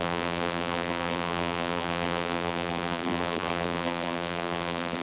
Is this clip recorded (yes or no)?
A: no